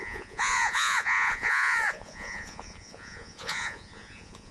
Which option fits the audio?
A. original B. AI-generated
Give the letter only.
B